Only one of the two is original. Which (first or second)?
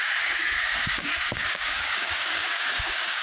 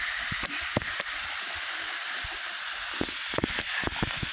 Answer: second